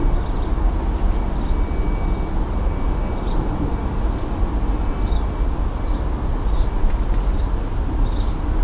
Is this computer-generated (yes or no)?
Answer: no